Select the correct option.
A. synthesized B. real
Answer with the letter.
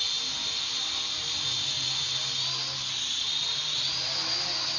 B